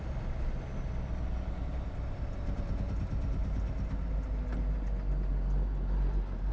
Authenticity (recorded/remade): recorded